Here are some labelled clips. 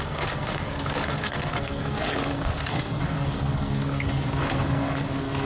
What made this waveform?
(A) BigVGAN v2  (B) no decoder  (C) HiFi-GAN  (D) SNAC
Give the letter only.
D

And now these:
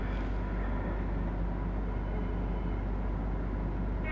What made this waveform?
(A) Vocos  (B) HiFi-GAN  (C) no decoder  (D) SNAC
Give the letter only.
C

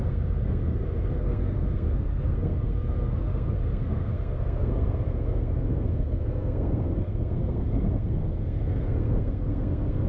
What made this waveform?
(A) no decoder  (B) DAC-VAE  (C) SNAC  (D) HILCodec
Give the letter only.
C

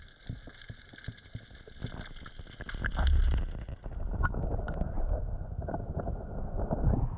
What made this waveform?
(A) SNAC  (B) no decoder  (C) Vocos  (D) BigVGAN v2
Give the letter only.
B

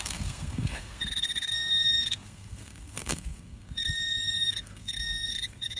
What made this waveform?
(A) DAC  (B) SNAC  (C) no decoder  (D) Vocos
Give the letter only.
B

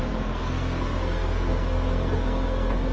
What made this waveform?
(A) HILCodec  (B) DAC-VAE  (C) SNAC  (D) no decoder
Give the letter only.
C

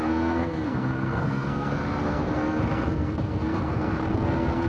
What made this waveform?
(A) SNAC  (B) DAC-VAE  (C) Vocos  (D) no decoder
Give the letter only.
A